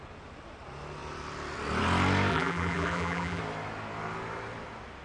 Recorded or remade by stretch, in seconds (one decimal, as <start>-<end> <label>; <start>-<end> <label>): 0.0-2.3 recorded; 2.3-3.4 remade; 3.4-5.0 recorded